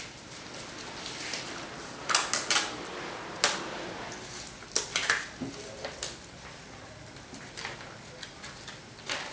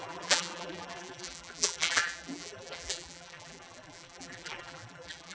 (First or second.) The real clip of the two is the first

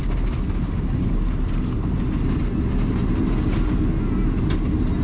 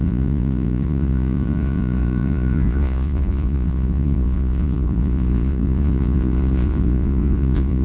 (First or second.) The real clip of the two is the first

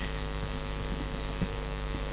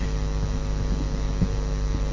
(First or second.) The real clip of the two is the second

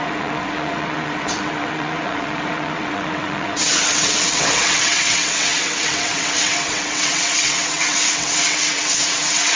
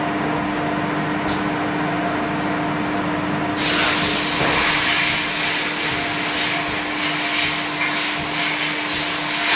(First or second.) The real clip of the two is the second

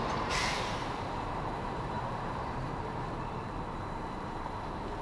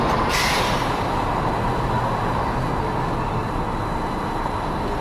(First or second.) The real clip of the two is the second